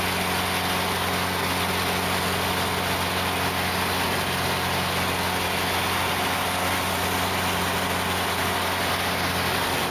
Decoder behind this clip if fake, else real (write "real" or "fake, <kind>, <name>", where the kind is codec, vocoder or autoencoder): real